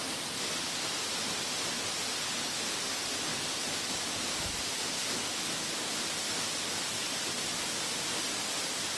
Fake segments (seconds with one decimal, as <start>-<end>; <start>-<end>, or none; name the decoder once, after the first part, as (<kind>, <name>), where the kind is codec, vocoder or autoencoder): none